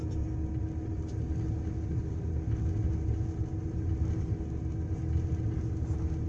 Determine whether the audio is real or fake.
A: real